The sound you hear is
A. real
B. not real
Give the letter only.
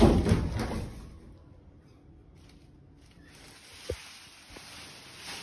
A